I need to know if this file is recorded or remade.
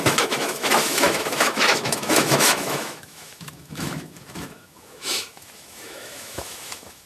remade